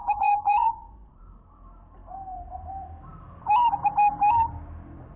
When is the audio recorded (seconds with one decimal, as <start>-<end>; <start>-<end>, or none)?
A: 1.2-5.2